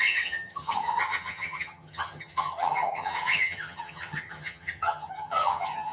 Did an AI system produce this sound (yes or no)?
yes